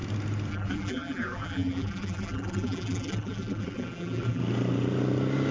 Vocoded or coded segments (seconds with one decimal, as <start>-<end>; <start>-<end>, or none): 0.5-4.4